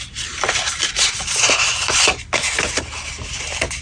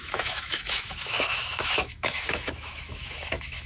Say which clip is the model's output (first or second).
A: second